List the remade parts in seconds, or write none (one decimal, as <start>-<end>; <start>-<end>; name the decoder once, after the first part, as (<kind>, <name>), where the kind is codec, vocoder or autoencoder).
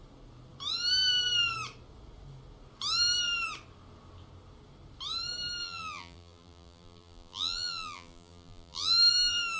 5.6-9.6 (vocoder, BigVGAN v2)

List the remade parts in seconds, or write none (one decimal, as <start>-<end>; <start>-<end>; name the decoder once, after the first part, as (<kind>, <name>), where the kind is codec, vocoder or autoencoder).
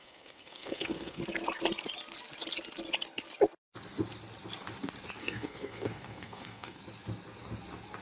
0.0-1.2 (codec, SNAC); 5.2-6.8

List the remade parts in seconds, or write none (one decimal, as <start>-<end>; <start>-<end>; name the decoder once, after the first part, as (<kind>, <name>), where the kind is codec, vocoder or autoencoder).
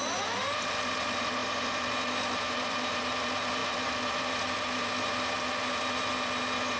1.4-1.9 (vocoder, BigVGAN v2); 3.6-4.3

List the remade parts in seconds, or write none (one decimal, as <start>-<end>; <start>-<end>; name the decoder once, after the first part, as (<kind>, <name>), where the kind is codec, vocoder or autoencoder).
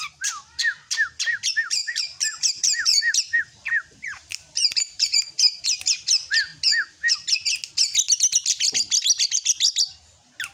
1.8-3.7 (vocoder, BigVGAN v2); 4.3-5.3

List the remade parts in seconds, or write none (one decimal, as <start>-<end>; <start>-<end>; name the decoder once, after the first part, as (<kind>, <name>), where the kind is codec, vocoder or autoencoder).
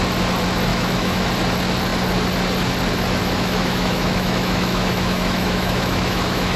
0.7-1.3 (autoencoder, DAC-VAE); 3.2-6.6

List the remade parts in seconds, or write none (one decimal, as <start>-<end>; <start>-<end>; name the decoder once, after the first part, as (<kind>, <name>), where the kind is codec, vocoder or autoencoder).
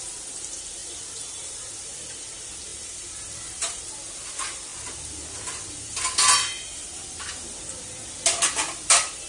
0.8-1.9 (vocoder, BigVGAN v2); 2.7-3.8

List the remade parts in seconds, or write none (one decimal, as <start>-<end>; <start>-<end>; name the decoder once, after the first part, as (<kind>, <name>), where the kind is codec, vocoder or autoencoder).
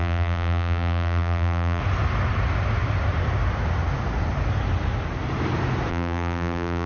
0.0-1.8 (vocoder, BigVGAN v2); 5.9-6.9